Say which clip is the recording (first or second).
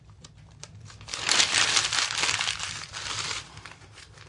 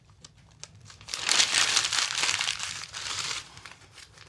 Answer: first